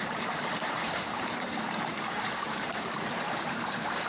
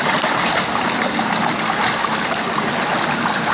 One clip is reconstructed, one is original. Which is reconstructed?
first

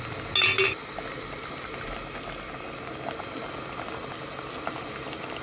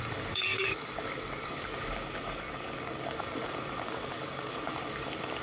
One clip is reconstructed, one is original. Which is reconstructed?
second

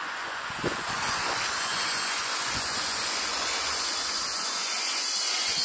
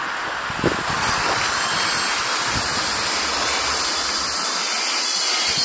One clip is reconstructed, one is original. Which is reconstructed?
first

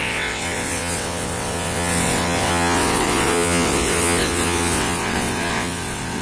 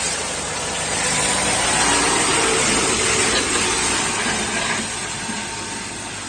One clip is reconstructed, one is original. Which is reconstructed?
first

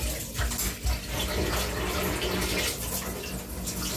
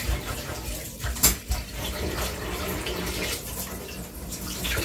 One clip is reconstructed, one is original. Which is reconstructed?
second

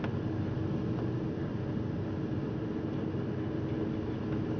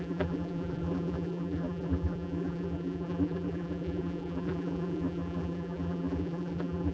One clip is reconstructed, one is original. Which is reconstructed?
second